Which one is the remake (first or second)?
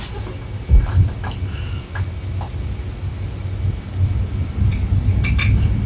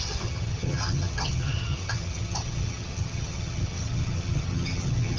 second